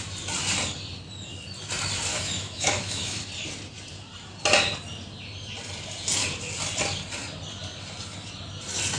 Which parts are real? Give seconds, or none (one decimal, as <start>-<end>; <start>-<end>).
0.0-2.1; 3.2-9.0